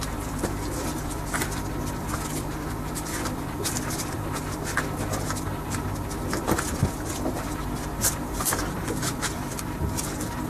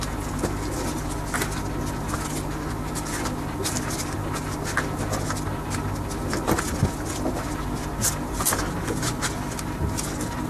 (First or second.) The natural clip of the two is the second